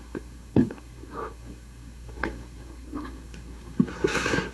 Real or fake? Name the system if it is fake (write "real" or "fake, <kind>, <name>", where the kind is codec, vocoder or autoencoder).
fake, codec, SNAC